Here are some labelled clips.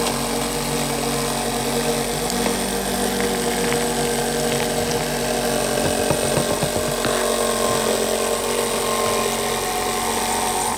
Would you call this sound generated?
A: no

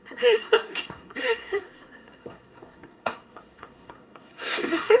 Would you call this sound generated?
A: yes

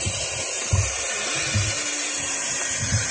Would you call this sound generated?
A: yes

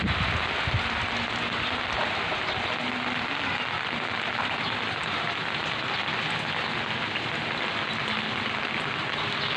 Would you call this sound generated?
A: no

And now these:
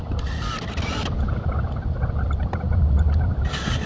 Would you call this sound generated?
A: no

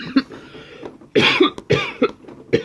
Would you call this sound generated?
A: no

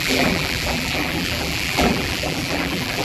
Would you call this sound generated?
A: yes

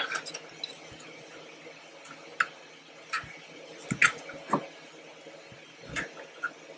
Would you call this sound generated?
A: no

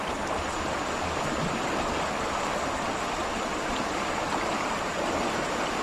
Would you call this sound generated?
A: no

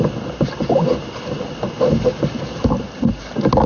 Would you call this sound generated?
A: no